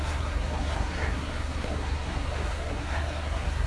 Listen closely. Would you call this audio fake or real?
fake